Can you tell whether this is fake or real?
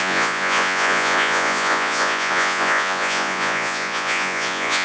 fake